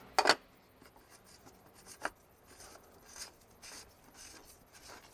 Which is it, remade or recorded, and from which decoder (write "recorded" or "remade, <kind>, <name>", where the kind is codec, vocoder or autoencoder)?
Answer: recorded